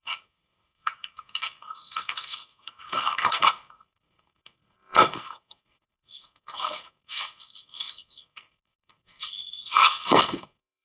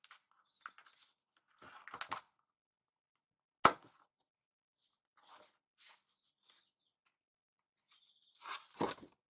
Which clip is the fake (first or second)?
first